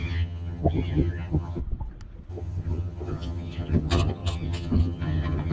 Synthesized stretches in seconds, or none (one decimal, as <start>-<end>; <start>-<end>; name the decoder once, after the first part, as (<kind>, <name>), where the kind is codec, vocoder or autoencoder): 0.0-1.6 (vocoder, HiFi-GAN); 2.3-5.5